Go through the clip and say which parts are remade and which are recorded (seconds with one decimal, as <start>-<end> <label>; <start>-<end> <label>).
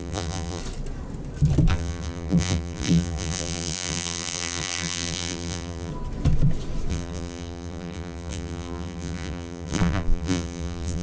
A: 0.0-0.6 remade; 0.6-1.7 recorded; 1.7-5.9 remade; 5.9-6.9 recorded; 6.9-11.0 remade